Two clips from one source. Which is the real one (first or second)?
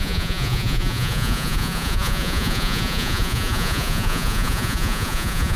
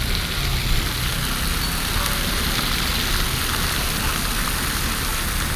second